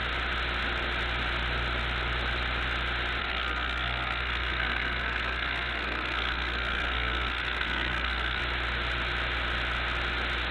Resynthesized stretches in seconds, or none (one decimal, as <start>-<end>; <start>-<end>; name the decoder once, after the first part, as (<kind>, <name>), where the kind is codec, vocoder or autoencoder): 3.2-8.4 (codec, SNAC)

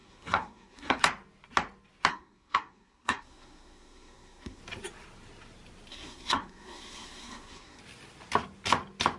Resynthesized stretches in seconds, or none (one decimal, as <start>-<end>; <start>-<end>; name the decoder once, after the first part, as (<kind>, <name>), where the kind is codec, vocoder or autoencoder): 0.0-1.0 (codec, SNAC); 2.1-4.6; 5.9-7.8

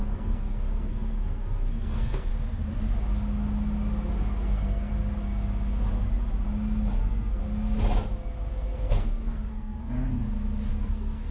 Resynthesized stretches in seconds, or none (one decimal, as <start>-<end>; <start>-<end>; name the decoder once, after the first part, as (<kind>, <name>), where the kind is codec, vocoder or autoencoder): 0.0-2.3 (codec, SNAC); 4.2-4.9; 6.9-7.4; 8.5-10.2; 10.7-11.3

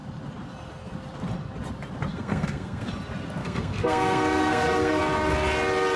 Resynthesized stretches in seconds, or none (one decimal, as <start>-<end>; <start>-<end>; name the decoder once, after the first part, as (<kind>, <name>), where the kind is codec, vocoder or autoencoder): 2.1-2.9 (codec, SNAC); 3.4-5.0

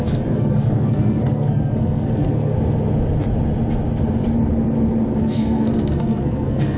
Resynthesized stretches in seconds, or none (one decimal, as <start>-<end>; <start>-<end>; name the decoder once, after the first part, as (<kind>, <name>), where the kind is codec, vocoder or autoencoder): 0.0-2.5 (codec, SNAC); 5.2-6.8

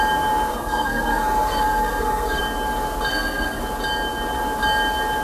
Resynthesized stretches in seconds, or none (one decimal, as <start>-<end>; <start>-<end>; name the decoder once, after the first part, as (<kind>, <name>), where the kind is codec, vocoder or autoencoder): 0.5-2.4 (codec, SNAC); 3.1-3.6

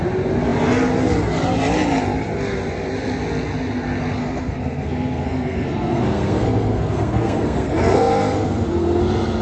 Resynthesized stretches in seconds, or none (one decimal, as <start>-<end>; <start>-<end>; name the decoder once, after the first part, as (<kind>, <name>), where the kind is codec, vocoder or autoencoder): 4.2-9.0 (codec, SNAC)

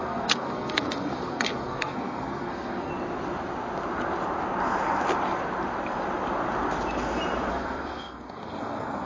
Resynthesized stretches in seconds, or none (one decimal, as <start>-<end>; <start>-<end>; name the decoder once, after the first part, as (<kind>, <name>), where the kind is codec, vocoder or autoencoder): 0.0-2.9 (codec, SNAC); 7.5-9.1